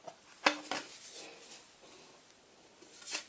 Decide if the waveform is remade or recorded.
recorded